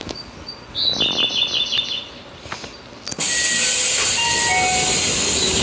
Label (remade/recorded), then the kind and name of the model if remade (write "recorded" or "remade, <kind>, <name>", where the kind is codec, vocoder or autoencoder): recorded